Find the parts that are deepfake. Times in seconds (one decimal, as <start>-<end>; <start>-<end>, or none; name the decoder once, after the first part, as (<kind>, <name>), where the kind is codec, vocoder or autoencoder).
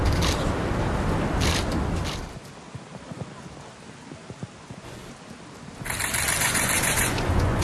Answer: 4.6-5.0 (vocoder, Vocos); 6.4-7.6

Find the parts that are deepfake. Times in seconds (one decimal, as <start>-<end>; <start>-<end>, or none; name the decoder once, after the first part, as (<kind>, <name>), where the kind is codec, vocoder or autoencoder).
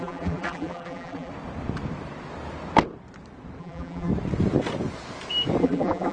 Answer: 0.0-1.3 (vocoder, BigVGAN v2); 3.6-4.1; 5.6-6.1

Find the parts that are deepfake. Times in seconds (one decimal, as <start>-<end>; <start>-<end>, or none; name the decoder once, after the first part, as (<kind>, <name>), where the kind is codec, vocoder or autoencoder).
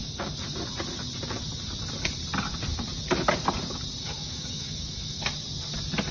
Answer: 4.0-5.2 (autoencoder, DAC-VAE)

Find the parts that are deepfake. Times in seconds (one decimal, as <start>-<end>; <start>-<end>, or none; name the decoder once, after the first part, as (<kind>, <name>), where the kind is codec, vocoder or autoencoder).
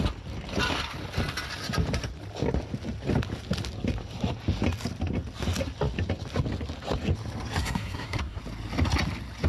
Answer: 7.6-8.4 (codec, SNAC)